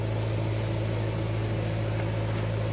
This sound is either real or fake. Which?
real